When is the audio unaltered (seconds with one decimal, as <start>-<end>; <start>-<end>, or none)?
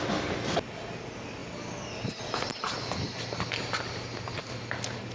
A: 0.0-5.1